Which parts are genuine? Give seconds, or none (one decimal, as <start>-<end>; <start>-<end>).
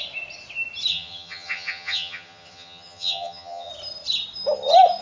0.0-0.9; 3.7-5.0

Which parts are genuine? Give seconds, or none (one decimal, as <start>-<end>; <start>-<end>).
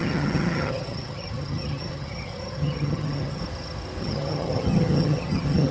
3.4-4.0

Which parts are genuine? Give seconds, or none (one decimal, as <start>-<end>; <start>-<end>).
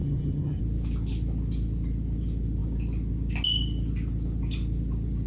0.6-5.3